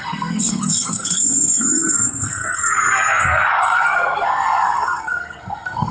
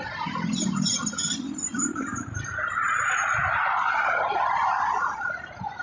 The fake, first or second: first